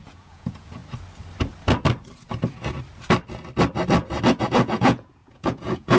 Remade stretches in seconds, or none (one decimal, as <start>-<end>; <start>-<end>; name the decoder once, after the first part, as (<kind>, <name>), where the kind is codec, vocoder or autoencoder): 0.0-0.8 (vocoder, Vocos); 4.4-6.0